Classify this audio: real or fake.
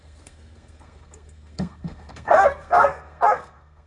fake